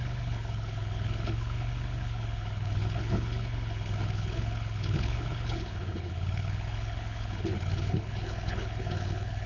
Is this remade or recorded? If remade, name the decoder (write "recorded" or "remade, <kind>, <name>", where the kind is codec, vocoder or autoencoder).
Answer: remade, codec, HILCodec